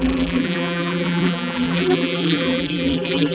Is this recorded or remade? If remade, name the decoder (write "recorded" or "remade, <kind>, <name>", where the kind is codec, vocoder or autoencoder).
remade, vocoder, BigVGAN v2